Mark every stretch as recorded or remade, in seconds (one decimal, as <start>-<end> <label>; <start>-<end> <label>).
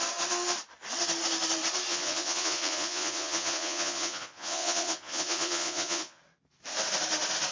0.0-1.9 recorded; 1.9-6.2 remade; 6.2-7.5 recorded